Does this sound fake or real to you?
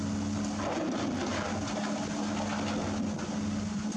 real